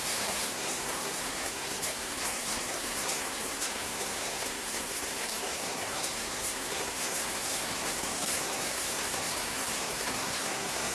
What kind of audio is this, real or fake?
fake